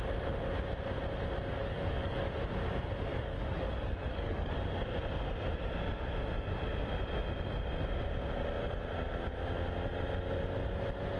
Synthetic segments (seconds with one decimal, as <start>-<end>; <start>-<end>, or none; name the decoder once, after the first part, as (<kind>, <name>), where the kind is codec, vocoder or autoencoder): 1.6-2.3 (codec, DAC); 3.1-4.5